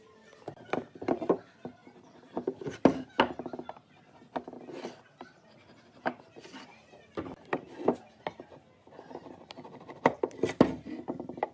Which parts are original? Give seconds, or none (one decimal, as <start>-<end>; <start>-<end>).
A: 0.0-11.5